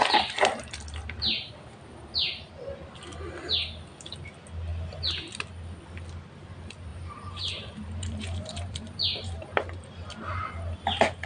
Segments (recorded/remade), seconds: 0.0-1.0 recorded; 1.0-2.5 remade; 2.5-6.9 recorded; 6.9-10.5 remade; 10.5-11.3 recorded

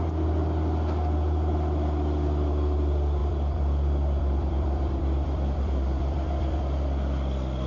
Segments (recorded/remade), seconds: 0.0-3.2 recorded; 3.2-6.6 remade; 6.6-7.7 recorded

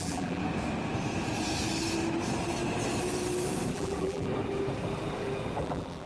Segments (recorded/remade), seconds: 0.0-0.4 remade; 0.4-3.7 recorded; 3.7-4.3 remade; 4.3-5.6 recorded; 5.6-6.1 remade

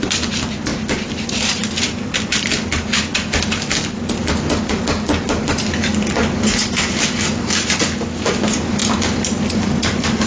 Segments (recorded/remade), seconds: 0.0-0.7 recorded; 0.7-2.5 remade; 2.5-8.8 recorded; 8.8-10.3 remade

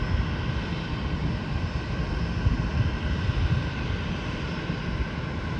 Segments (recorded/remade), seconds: 0.0-1.2 recorded; 1.2-2.0 remade; 2.0-2.7 recorded; 2.7-4.8 remade; 4.8-5.6 recorded

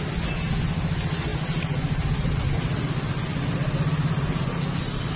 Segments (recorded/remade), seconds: 0.0-5.2 recorded

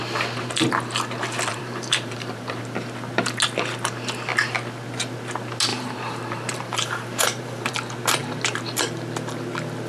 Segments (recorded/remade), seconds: 0.0-1.5 recorded; 1.5-2.6 remade; 2.6-5.7 recorded; 5.7-7.7 remade; 7.7-8.2 recorded; 8.2-8.9 remade; 8.9-9.9 recorded